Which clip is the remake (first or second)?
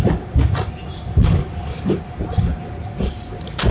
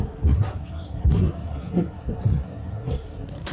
second